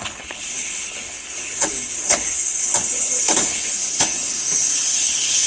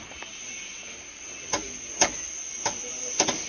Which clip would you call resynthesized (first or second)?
first